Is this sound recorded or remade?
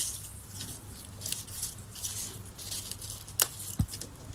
recorded